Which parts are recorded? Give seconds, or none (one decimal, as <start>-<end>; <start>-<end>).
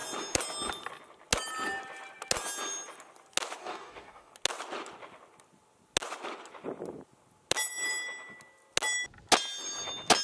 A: 0.0-3.6; 4.3-10.2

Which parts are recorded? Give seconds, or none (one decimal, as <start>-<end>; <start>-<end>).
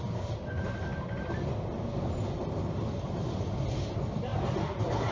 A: 0.0-5.1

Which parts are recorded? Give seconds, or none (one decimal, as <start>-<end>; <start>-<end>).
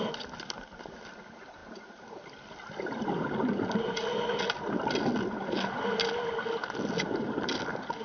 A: 0.0-8.0